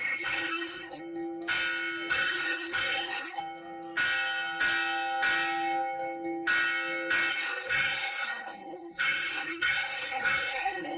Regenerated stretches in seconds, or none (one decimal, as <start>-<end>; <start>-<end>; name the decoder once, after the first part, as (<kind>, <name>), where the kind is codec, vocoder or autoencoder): 0.0-1.0 (codec, SNAC); 2.1-3.4; 7.3-11.0